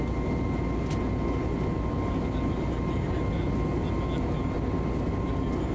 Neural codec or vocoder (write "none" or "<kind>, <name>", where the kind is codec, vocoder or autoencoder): none